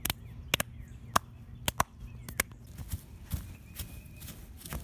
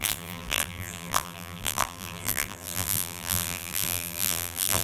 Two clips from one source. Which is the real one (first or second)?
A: first